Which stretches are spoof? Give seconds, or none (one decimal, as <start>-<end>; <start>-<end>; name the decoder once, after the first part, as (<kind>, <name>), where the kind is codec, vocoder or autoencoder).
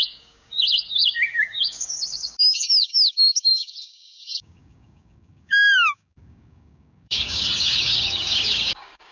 0.0-9.1 (codec, DAC)